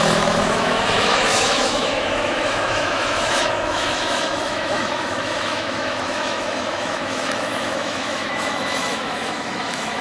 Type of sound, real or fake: fake